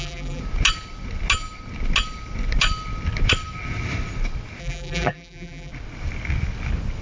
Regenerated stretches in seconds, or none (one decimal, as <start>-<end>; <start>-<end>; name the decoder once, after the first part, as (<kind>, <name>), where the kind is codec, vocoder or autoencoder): 0.0-0.4 (vocoder, BigVGAN v2); 4.6-5.7